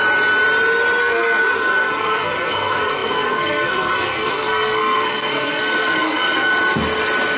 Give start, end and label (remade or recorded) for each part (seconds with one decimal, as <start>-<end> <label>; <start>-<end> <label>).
0.0-1.0 recorded; 1.0-6.5 remade; 6.5-7.4 recorded